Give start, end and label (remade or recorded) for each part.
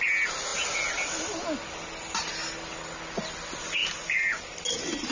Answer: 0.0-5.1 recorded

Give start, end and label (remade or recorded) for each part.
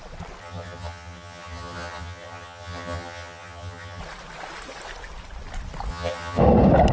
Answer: 0.0-0.4 recorded; 0.4-4.0 remade; 4.0-5.9 recorded; 5.9-6.4 remade; 6.4-6.9 recorded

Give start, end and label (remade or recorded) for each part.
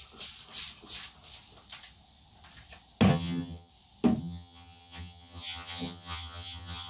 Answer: 0.0-3.1 recorded; 3.1-3.7 remade; 3.7-4.2 recorded; 4.2-6.9 remade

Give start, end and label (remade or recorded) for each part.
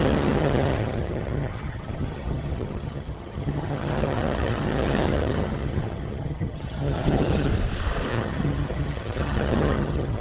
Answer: 0.0-7.5 remade; 7.5-8.1 recorded; 8.1-10.2 remade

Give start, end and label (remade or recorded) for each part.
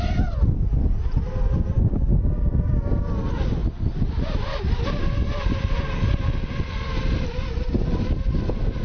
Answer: 0.0-8.8 recorded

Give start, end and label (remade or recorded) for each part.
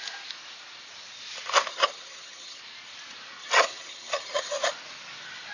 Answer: 0.0-1.7 recorded; 1.7-2.6 remade; 2.6-3.4 recorded; 3.4-4.7 remade; 4.7-5.5 recorded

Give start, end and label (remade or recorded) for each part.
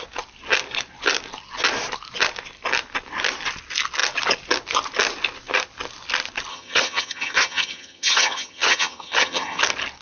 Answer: 0.0-6.5 recorded; 6.5-9.6 remade; 9.6-10.0 recorded